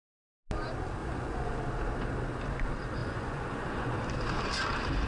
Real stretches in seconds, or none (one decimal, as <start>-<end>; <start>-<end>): 0.0-1.0; 1.6-3.0; 4.0-5.1